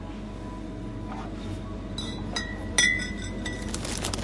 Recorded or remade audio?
recorded